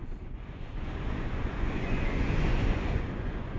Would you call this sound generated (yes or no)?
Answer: yes